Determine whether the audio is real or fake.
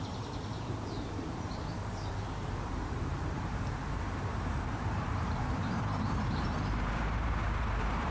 fake